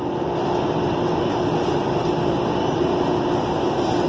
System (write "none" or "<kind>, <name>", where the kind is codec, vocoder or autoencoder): none